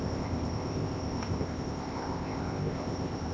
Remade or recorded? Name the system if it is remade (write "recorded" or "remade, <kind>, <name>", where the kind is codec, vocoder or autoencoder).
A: remade, codec, ZipCodec